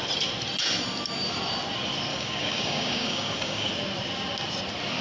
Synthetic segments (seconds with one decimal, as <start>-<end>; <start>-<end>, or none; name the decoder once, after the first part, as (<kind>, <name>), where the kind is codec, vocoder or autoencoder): 2.1-3.7 (codec, DAC)